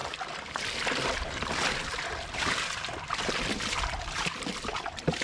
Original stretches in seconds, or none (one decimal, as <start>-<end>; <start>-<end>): none